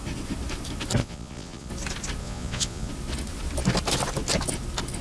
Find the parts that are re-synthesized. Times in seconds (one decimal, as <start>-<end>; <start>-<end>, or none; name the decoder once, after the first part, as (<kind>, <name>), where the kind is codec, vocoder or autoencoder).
1.0-1.7 (vocoder, Vocos); 2.2-2.9